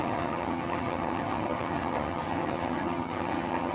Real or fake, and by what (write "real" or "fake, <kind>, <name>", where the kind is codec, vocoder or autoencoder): fake, vocoder, HiFi-GAN